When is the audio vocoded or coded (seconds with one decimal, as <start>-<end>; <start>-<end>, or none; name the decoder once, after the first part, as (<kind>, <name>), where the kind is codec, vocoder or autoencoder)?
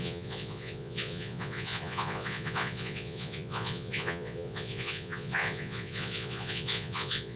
0.0-7.4 (vocoder, Vocos)